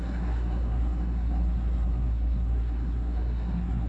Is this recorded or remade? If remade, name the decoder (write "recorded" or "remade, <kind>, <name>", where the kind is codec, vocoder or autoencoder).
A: remade, codec, SNAC